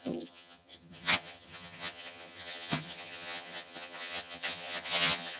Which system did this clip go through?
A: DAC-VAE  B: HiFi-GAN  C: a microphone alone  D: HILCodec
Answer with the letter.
B